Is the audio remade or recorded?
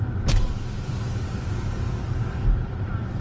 recorded